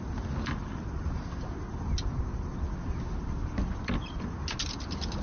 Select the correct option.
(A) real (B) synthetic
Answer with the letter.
A